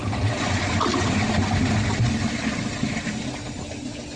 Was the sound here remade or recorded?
recorded